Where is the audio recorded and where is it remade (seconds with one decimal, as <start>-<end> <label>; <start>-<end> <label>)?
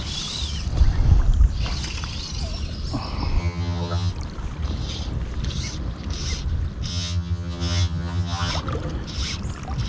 0.0-3.4 recorded; 3.4-4.1 remade; 4.1-6.9 recorded; 6.9-8.5 remade; 8.5-9.9 recorded